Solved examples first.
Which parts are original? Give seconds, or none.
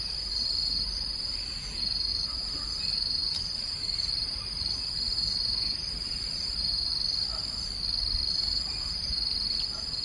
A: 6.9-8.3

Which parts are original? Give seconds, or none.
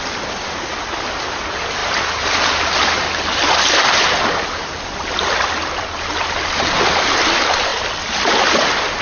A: 0.0-1.8; 2.7-9.0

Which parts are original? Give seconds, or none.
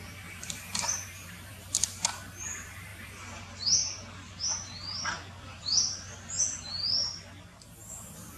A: 7.1-7.9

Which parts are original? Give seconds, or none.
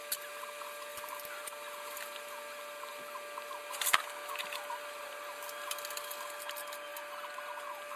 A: 0.0-0.9; 1.5-8.0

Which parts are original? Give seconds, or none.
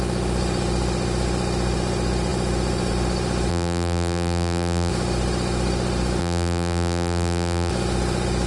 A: 0.0-3.5; 4.9-6.2; 7.7-8.5